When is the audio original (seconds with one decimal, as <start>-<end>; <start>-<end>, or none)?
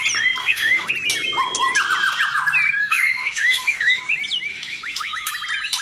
0.0-0.4; 0.9-2.8; 4.0-4.5; 5.3-5.8